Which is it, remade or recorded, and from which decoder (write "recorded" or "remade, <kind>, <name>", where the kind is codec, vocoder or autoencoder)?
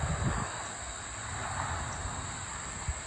recorded